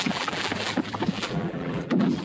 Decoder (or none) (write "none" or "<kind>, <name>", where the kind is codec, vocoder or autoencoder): vocoder, BigVGAN v2